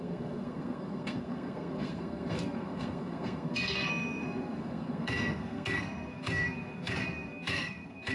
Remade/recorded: remade